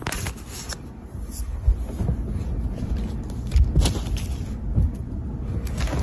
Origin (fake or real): real